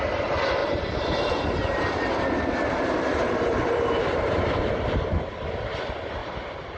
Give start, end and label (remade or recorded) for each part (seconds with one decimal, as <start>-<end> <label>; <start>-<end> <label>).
0.0-0.6 recorded; 0.6-4.7 remade; 4.7-6.8 recorded